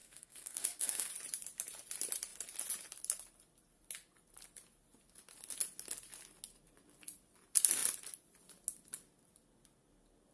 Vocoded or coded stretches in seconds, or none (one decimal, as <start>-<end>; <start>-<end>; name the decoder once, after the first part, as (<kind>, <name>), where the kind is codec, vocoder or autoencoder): 0.0-1.1 (codec, SNAC)